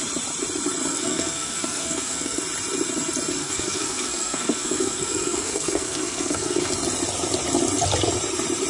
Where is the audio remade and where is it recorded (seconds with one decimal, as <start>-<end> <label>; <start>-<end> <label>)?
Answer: 0.0-0.9 recorded; 0.9-2.4 remade; 2.4-3.4 recorded; 3.4-6.7 remade; 6.7-8.7 recorded